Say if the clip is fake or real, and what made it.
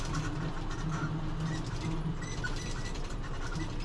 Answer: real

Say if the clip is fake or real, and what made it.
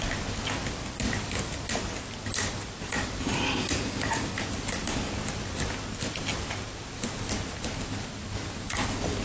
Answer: real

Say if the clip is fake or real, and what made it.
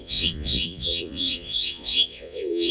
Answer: fake, vocoder, Vocos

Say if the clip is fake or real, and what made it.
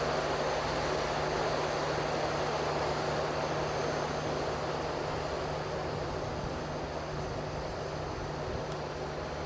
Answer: real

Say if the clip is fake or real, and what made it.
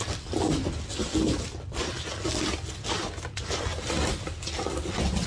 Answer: real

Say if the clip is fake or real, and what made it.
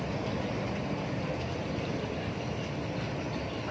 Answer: real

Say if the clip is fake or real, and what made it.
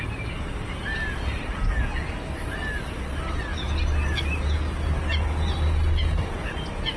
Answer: real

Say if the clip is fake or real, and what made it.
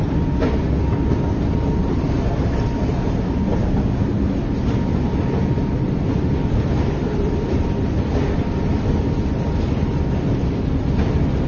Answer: real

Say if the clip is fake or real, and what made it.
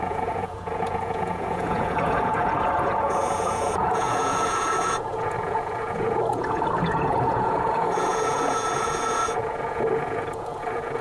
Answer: fake, vocoder, Vocos